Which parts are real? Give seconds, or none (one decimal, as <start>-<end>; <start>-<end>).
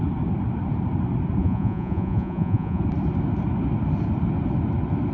0.0-1.4; 2.8-5.1